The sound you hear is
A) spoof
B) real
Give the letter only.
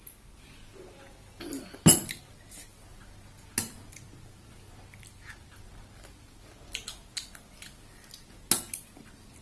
B